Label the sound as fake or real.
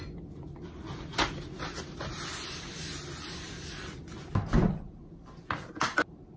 real